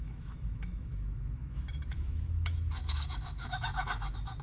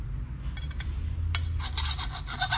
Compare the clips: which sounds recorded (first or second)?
second